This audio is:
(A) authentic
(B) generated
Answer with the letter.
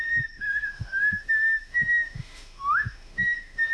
B